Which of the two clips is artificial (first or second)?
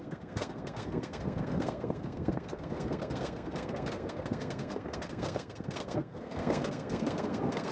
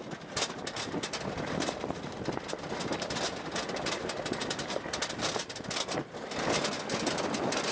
first